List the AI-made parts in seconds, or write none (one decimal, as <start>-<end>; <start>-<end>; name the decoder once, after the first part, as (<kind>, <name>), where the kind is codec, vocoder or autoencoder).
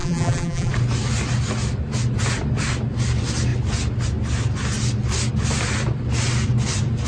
0.0-0.7 (vocoder, BigVGAN v2)